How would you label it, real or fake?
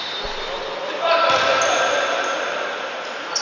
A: real